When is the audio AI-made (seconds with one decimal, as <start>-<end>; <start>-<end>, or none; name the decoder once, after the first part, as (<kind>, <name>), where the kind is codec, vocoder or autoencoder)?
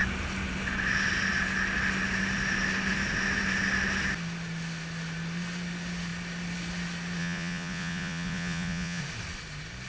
7.2-9.0 (vocoder, Vocos)